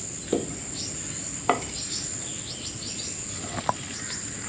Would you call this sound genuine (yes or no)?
yes